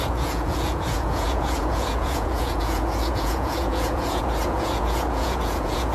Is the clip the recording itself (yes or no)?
no